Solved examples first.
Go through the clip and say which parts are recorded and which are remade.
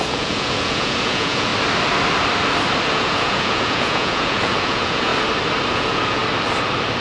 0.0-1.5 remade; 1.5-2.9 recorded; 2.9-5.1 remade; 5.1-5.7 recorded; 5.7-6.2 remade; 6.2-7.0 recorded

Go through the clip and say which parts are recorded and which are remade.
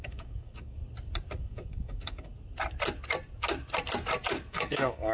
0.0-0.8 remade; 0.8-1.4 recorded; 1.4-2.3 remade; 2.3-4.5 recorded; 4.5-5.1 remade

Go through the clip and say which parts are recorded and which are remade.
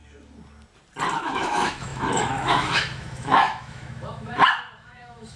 0.0-1.2 recorded; 1.2-5.4 remade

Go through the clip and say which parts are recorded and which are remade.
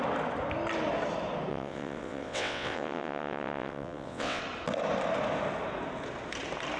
0.0-1.5 recorded; 1.5-4.4 remade; 4.4-6.8 recorded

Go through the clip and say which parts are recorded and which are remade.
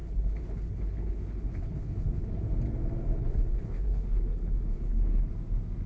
0.0-2.4 remade; 2.4-3.2 recorded; 3.2-5.3 remade; 5.3-5.9 recorded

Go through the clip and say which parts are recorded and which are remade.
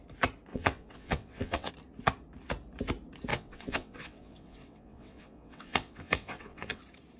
0.0-0.5 recorded; 0.5-1.7 remade; 1.7-3.3 recorded; 3.3-6.8 remade; 6.8-7.2 recorded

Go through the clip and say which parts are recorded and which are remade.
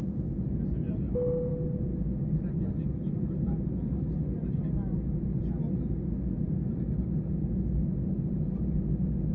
0.0-9.3 recorded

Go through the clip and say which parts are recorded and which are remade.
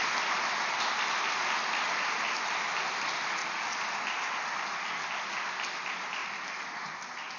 0.0-7.4 recorded